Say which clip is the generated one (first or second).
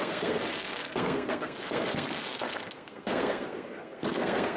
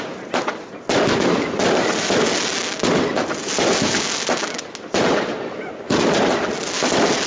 first